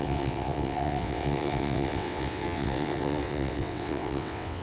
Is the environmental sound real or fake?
fake